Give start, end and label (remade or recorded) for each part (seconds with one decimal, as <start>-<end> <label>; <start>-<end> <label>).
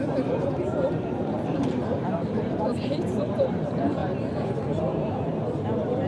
0.0-6.1 remade